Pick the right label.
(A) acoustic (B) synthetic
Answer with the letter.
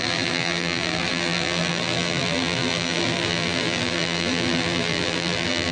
B